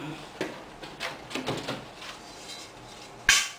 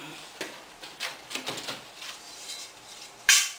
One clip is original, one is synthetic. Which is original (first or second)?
first